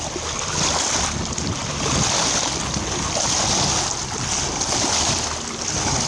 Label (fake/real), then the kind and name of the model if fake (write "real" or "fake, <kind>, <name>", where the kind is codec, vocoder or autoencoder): real